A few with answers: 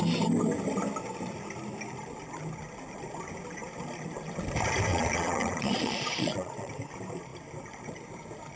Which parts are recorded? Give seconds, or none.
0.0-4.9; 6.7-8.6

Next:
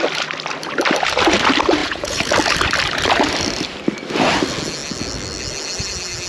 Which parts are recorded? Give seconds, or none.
0.0-1.8; 2.3-6.3

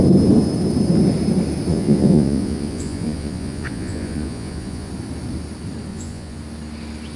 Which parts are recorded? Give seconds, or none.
0.0-1.7; 4.9-5.9; 6.4-7.2

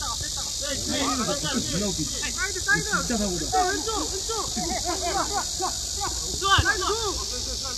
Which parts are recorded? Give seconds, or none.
0.0-7.8

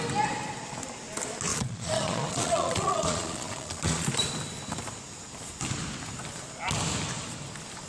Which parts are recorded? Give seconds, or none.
0.0-1.5; 4.1-7.9

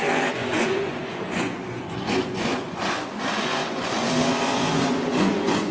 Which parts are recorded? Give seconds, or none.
none

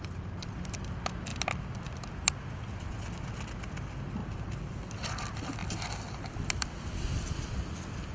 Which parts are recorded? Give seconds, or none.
0.0-8.1

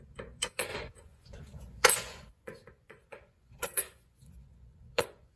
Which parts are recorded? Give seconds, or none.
none